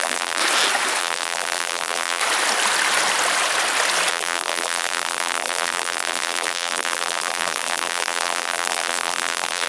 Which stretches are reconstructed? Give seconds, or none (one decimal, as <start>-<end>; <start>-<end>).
0.0-0.4; 1.0-2.2; 4.1-9.7

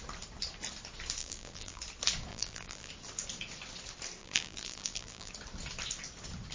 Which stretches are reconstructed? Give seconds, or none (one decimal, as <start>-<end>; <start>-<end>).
1.2-1.8; 2.3-2.9; 4.2-5.3